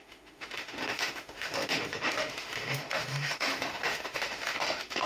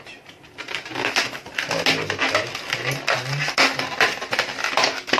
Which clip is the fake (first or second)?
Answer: first